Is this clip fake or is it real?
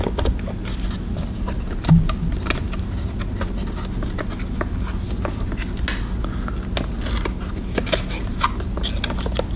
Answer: real